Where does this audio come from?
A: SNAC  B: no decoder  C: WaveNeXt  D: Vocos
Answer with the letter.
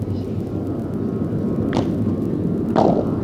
B